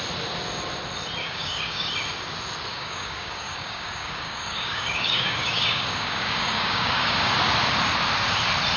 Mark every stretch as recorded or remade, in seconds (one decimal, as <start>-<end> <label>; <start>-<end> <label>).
0.0-1.2 recorded; 1.2-1.9 remade; 1.9-2.7 recorded; 2.7-7.3 remade; 7.3-8.8 recorded